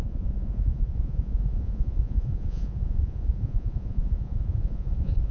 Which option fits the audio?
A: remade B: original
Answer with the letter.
A